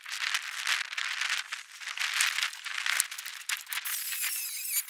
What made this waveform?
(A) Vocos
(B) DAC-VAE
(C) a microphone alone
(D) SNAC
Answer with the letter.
C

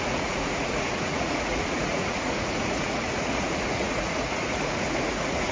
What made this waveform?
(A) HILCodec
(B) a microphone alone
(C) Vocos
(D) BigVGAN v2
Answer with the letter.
C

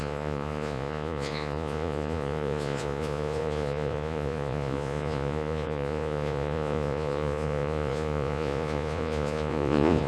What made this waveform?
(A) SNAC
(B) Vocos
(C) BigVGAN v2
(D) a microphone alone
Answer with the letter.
B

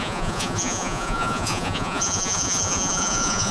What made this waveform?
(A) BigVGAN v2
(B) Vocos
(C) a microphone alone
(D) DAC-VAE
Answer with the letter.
B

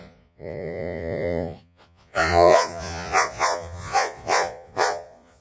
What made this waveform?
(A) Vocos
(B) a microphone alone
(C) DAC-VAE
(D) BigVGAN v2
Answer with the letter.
A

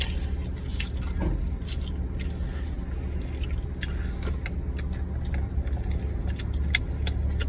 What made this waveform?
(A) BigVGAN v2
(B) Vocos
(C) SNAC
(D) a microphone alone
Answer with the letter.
D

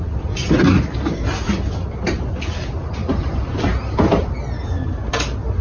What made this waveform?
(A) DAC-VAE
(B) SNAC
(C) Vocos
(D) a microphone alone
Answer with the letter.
D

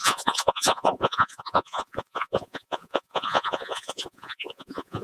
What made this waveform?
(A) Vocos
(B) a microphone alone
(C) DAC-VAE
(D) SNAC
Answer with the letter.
A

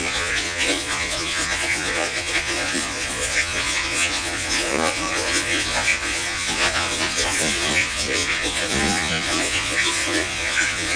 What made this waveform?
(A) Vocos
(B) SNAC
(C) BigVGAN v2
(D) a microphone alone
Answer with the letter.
A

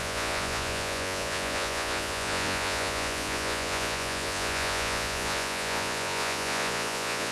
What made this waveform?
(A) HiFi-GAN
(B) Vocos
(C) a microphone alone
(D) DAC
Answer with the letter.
B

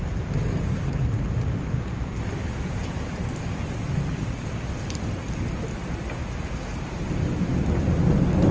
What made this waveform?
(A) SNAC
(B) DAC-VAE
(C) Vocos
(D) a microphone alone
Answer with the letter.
D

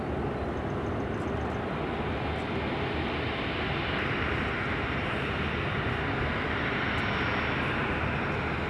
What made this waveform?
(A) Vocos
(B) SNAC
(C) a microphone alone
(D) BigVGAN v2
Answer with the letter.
C